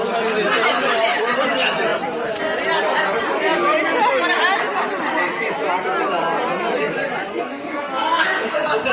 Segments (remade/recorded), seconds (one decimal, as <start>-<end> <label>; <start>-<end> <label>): 0.0-7.3 recorded; 7.3-8.9 remade